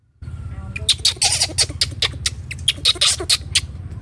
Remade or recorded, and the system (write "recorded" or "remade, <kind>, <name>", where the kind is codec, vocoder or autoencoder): recorded